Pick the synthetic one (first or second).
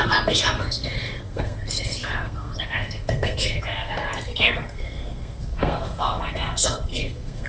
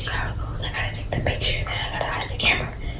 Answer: first